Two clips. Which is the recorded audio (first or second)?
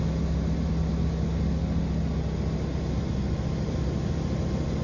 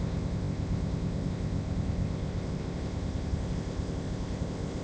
first